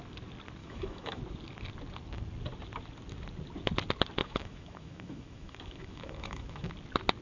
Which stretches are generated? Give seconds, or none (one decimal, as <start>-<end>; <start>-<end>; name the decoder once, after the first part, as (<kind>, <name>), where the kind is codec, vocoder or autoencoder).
0.6-1.2 (autoencoder, DAC-VAE); 4.2-6.7